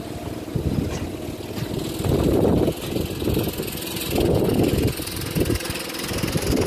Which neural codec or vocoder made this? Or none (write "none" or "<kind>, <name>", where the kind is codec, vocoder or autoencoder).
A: none